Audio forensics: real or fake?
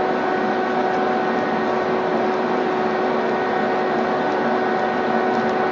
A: real